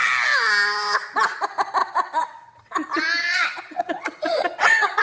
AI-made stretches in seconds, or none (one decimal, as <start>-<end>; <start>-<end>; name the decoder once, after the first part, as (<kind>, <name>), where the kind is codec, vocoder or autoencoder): 1.8-2.7 (vocoder, WaveNeXt); 3.2-5.0